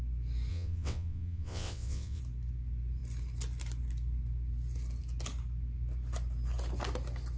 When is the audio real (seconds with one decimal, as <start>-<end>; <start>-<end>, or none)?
0.0-0.5; 2.2-7.4